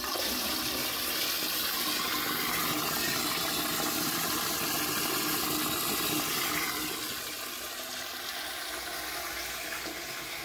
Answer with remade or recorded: recorded